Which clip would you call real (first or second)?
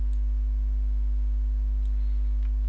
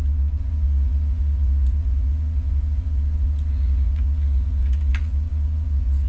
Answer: first